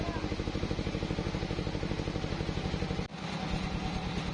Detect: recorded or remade recorded